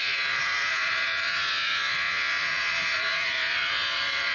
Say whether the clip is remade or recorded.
remade